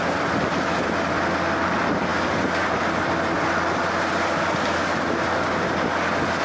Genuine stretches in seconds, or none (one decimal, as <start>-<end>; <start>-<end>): 0.0-6.4